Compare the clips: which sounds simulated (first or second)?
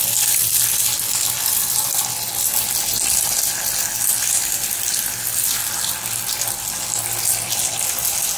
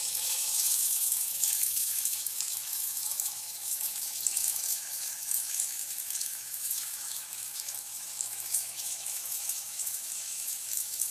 second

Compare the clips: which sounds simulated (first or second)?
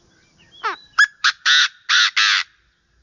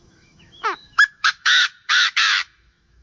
second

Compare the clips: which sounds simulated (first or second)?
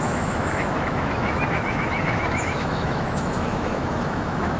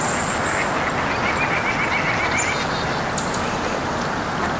first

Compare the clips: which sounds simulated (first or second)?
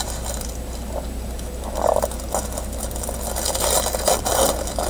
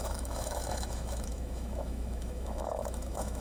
second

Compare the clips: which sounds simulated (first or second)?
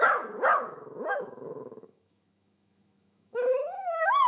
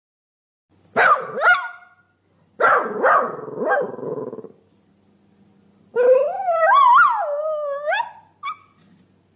first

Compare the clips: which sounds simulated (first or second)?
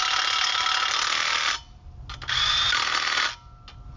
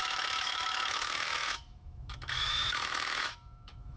second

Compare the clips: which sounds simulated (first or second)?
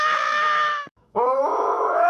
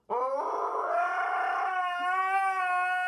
first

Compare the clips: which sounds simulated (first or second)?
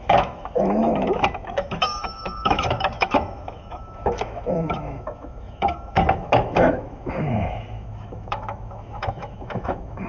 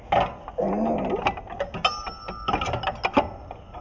first